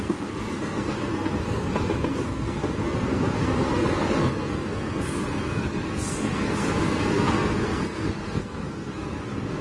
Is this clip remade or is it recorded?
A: remade